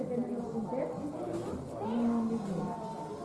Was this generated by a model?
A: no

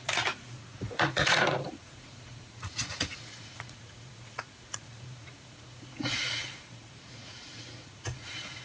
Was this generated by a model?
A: yes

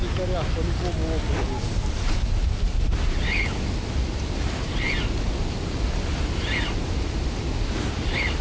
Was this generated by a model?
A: no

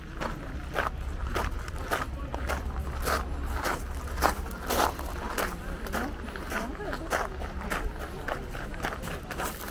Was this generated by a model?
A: no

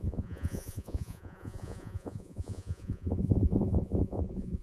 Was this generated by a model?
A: yes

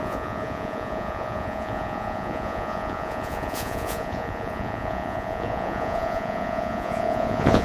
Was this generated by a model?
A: yes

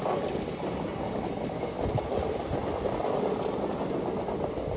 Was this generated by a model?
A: no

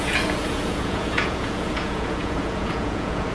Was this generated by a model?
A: yes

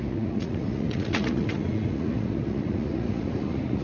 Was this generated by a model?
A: yes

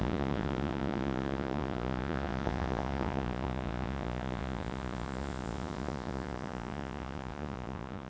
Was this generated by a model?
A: yes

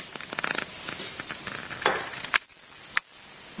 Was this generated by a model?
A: no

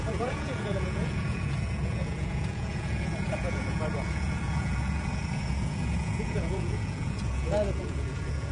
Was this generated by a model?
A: yes